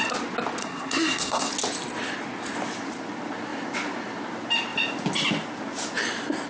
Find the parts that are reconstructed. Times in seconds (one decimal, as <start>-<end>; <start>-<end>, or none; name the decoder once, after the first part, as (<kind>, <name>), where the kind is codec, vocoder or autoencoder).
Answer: 0.6-1.5 (codec, SNAC)